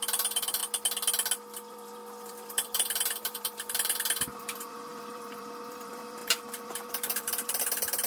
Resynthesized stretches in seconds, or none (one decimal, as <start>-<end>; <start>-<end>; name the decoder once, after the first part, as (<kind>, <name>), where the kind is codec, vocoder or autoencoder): 0.0-0.6 (vocoder, BigVGAN v2); 1.7-8.1